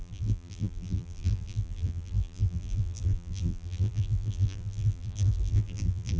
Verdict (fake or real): fake